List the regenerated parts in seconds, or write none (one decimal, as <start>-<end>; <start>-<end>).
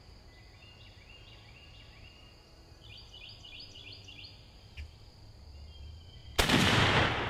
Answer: none